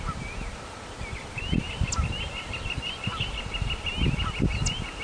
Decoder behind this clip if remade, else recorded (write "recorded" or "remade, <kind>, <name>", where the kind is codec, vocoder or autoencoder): recorded